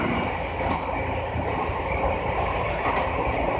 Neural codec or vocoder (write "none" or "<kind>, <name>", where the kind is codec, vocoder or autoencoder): none